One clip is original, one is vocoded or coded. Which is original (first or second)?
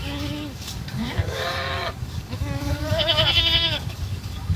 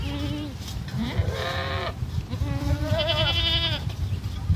second